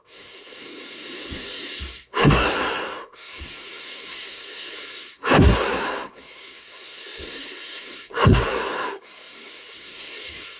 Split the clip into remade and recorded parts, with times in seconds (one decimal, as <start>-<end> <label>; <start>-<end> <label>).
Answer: 0.0-10.6 remade